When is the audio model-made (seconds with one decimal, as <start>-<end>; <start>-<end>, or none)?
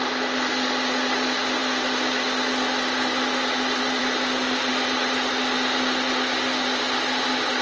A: none